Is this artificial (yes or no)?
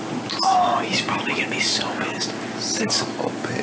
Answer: no